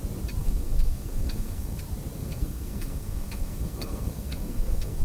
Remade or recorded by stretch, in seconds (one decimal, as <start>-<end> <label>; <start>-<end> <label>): 0.0-0.4 recorded; 0.4-1.8 remade; 1.8-2.2 recorded; 2.2-5.0 remade